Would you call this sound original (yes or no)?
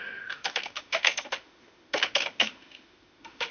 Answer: no